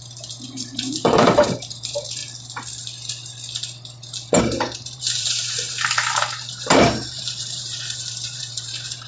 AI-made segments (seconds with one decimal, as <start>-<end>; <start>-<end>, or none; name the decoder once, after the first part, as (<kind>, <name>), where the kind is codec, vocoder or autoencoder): 0.0-2.2 (vocoder, BigVGAN v2); 4.4-9.1